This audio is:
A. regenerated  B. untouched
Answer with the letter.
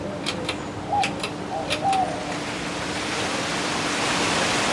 A